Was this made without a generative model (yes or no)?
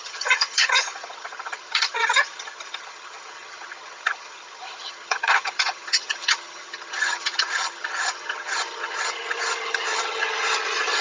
no